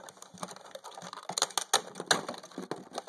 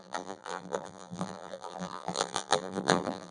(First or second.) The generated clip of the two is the second